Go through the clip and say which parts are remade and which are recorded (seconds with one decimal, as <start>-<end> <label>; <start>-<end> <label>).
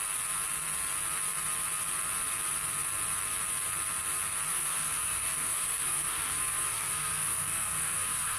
0.0-4.5 recorded; 4.5-8.4 remade